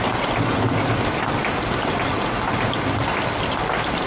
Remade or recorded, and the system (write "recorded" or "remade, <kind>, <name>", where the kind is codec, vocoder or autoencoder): recorded